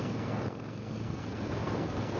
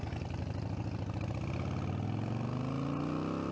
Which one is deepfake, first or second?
first